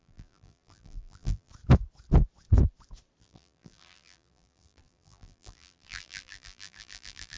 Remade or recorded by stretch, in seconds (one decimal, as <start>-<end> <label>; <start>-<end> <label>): 0.0-1.5 remade; 1.5-3.2 recorded; 3.2-7.4 remade